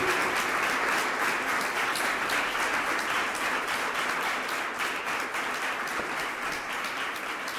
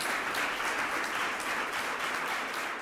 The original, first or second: first